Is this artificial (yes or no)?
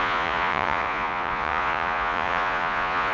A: yes